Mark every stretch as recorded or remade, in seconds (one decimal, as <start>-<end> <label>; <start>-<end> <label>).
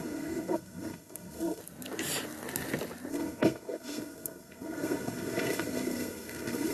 0.0-1.6 remade; 1.6-3.1 recorded; 3.1-6.7 remade